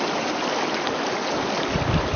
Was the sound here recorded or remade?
recorded